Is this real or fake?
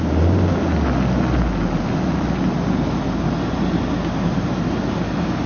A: real